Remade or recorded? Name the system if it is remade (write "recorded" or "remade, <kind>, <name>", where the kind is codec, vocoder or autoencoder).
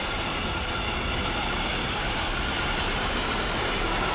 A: recorded